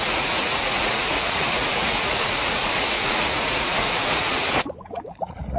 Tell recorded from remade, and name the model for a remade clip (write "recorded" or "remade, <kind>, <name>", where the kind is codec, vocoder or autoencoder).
remade, vocoder, Vocos